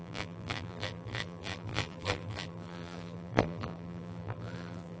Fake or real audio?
fake